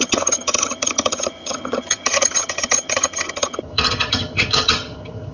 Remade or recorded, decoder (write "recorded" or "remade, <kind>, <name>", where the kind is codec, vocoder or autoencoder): remade, vocoder, HiFi-GAN